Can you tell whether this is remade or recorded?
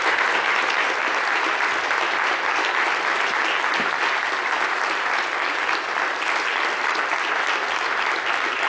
recorded